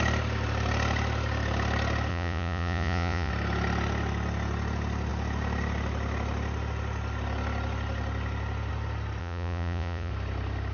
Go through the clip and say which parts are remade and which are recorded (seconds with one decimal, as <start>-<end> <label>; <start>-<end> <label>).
0.0-2.1 recorded; 2.1-3.3 remade; 3.3-9.2 recorded; 9.2-10.1 remade; 10.1-10.7 recorded